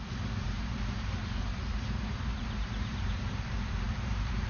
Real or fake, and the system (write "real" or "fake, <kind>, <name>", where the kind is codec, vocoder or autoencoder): fake, vocoder, BigVGAN v2